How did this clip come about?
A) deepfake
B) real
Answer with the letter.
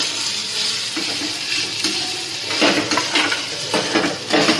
B